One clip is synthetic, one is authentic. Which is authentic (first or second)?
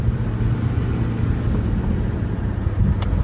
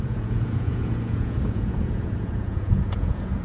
first